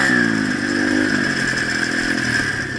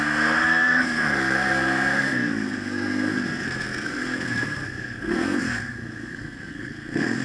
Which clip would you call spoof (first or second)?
second